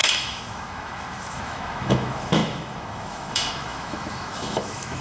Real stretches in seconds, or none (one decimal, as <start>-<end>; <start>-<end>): none